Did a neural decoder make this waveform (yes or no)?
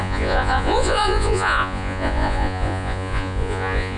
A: yes